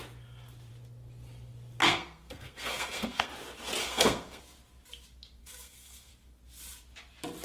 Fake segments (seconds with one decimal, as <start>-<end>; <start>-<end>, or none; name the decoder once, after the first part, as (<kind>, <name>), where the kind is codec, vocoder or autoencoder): 1.8-3.3 (codec, SNAC); 3.8-4.4; 5.4-6.1